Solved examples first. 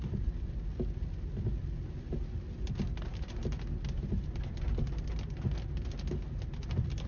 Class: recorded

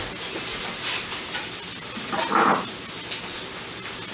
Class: recorded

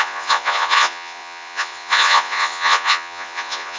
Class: remade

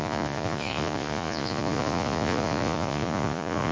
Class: remade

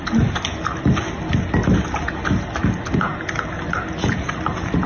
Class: recorded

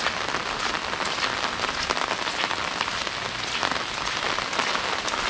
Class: recorded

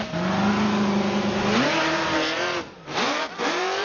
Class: recorded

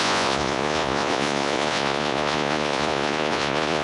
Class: remade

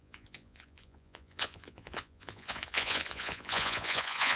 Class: remade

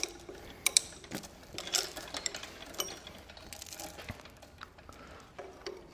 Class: recorded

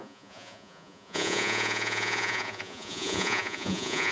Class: remade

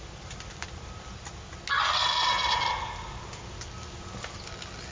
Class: recorded